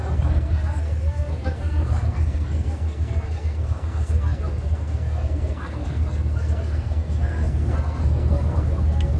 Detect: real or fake fake